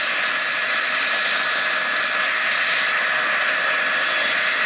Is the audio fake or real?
real